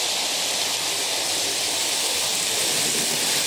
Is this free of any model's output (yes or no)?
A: yes